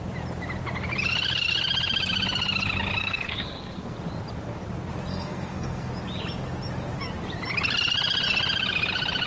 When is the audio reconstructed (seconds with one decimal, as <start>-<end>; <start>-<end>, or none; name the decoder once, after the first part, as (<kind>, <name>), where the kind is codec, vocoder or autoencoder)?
3.0-4.0 (codec, SNAC); 5.1-5.9